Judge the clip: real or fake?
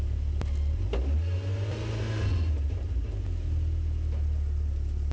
real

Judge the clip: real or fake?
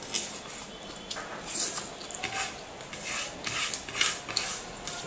real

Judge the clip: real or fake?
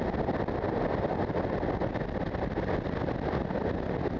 real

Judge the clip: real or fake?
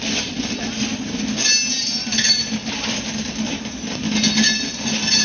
real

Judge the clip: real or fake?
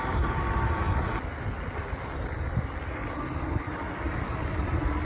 real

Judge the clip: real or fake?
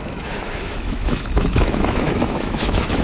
fake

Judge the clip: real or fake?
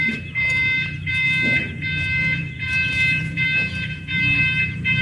fake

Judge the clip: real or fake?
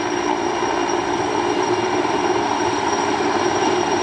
fake